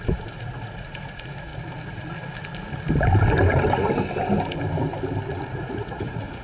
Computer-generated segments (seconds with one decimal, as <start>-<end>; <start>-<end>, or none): 0.0-1.5; 5.3-6.4